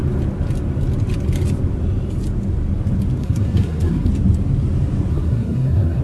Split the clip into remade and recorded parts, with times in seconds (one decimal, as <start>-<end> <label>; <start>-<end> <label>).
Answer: 0.0-3.2 recorded; 3.2-4.1 remade; 4.1-5.1 recorded; 5.1-6.0 remade